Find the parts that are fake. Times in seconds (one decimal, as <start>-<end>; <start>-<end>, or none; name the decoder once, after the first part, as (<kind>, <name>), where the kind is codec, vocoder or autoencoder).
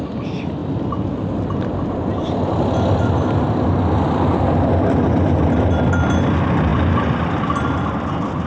none